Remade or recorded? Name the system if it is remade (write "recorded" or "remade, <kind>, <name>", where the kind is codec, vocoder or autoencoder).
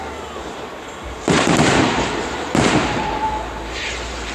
remade, vocoder, BigVGAN v2